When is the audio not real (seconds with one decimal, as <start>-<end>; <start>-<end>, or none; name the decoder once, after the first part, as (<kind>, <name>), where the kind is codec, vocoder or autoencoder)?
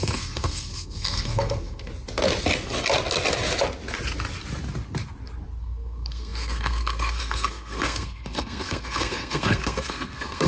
0.0-1.9 (codec, SNAC); 5.6-10.5